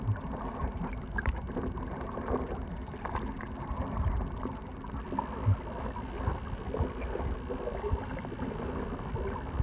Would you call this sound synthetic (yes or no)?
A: no